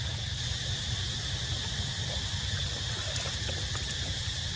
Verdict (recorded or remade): recorded